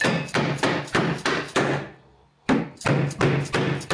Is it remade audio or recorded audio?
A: recorded